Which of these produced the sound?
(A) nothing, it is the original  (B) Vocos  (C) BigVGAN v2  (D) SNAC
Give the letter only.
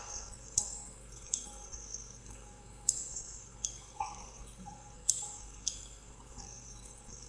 D